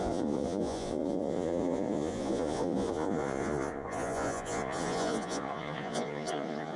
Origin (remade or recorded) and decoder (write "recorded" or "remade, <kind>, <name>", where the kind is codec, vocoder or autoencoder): remade, vocoder, Vocos